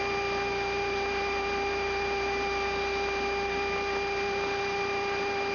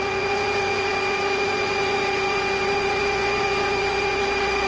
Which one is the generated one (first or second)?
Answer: second